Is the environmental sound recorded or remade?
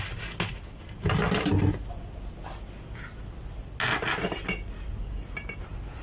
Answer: recorded